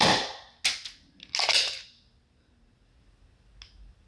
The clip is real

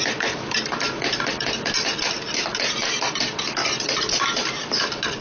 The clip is fake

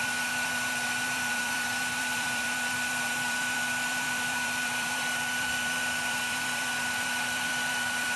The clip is fake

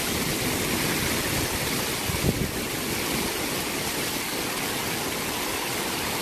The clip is real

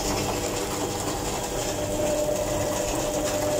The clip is real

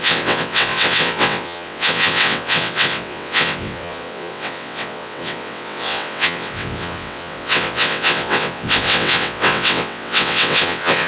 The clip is fake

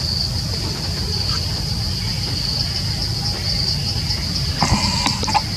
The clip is real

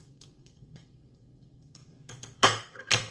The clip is fake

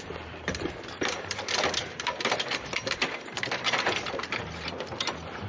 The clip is fake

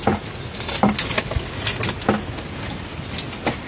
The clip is real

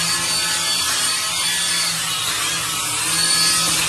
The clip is real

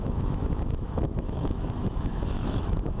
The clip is fake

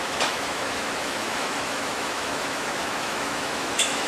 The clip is fake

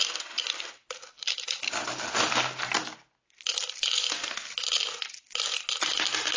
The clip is real